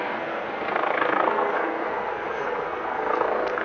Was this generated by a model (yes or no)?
yes